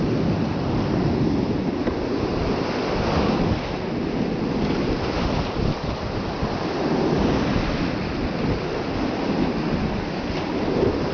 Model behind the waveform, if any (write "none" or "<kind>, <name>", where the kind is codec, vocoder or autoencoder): none